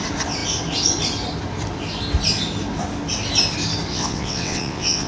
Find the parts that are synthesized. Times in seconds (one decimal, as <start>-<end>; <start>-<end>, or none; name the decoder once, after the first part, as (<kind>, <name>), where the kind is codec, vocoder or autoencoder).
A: 3.9-5.1 (vocoder, WaveNeXt)